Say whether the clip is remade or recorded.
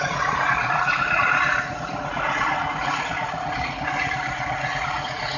remade